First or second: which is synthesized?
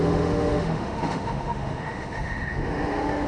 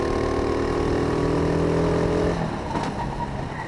first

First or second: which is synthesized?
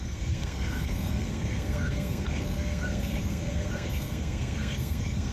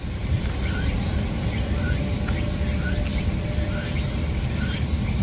first